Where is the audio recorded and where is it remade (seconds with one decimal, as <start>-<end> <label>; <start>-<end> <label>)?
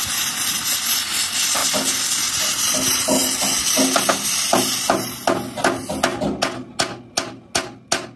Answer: 0.0-8.2 recorded